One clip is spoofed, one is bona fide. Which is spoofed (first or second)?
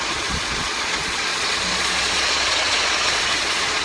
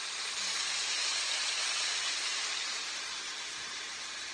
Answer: first